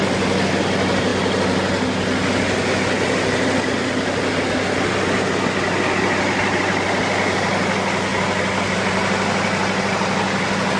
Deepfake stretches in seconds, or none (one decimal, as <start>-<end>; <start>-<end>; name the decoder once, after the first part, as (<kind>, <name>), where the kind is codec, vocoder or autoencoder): none